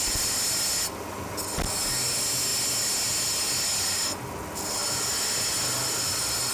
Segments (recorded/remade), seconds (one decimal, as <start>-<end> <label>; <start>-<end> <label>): 0.0-6.5 recorded